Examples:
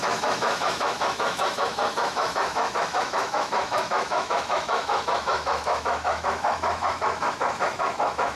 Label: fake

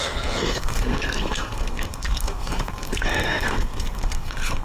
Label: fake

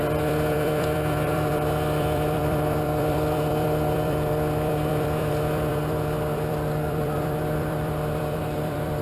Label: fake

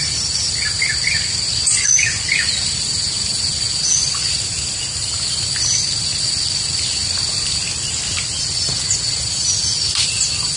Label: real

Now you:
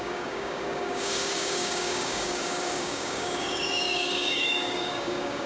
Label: fake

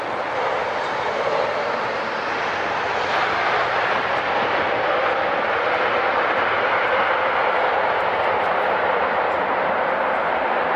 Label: fake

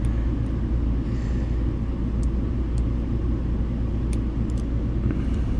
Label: real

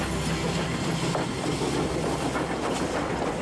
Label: real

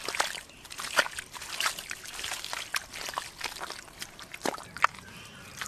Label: real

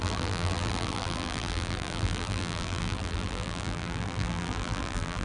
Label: fake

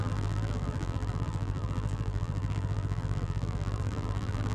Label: fake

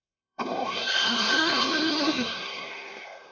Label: fake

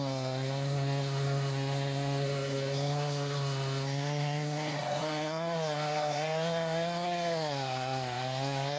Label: fake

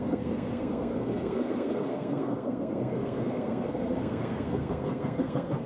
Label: fake